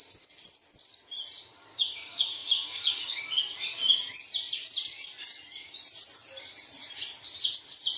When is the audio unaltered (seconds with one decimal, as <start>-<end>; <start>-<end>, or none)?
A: 0.0-1.7; 3.4-8.0

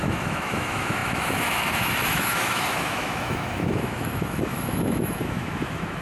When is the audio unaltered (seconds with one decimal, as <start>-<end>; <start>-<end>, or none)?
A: none

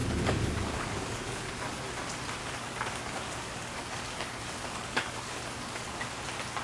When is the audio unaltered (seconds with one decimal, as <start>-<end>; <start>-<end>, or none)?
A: 1.8-2.4; 6.1-6.6

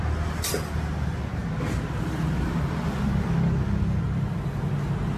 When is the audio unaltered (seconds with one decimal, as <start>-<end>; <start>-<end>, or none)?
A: 0.0-5.2

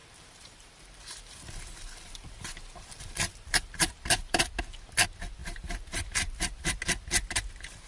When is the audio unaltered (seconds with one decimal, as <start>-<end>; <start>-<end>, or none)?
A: 4.4-5.4; 6.8-7.9

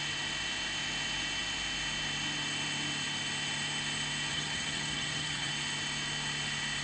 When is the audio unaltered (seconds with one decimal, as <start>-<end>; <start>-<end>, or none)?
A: 0.0-4.3; 5.5-6.8

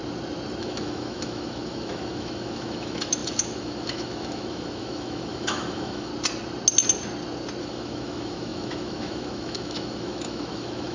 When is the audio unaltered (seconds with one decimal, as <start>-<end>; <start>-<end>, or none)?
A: 0.0-0.6; 6.1-7.6

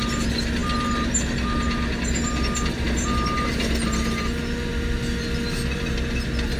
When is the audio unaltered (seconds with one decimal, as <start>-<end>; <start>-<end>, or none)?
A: 0.0-6.6